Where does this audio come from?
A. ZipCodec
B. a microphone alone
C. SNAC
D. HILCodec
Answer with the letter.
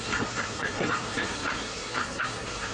C